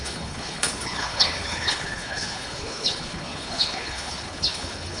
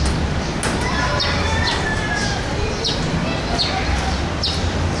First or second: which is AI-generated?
first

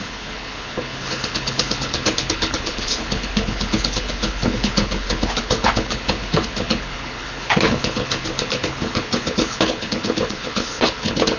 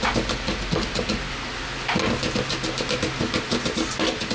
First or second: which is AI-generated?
first